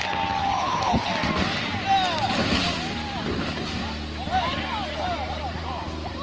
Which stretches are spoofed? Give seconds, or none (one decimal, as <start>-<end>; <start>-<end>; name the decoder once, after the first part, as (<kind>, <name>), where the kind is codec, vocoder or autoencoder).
0.4-1.1 (codec, HILCodec)